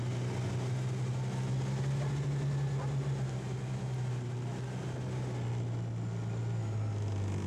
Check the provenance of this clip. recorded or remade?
recorded